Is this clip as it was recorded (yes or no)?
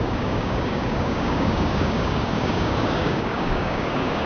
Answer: no